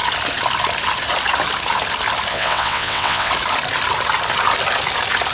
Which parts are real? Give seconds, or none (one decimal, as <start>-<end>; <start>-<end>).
0.0-2.3; 3.3-5.3